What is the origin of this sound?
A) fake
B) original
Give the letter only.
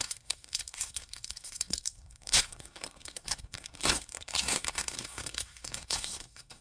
A